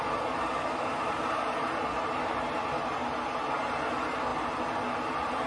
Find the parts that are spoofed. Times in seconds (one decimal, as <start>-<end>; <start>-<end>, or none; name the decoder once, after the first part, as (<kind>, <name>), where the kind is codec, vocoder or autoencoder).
none